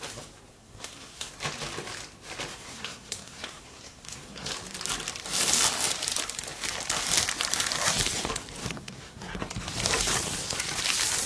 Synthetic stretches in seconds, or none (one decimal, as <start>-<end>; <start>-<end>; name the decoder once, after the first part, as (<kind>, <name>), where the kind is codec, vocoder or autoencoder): 0.5-1.3 (codec, SNAC); 2.5-4.5; 8.6-9.4